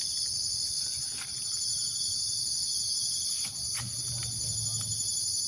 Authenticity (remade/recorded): recorded